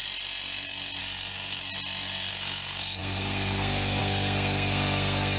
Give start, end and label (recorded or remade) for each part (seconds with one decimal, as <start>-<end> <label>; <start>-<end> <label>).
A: 0.0-1.0 recorded; 1.0-1.6 remade; 1.6-2.3 recorded; 2.3-5.4 remade

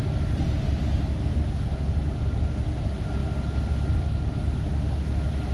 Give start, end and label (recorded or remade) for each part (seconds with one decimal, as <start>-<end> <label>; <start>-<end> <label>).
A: 0.0-5.5 recorded

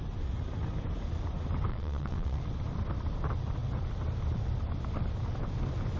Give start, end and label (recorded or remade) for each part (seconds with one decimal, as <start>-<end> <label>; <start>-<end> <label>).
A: 0.0-1.7 recorded; 1.7-2.4 remade; 2.4-6.0 recorded